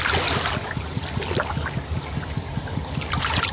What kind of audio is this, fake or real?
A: real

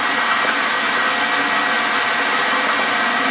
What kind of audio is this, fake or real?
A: real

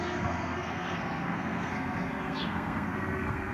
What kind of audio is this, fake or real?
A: fake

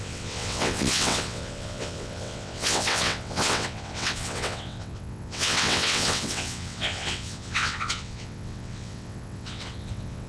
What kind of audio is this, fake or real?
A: fake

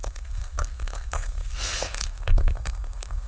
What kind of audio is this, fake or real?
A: fake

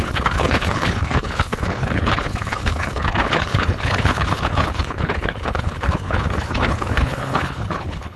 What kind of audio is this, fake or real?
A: fake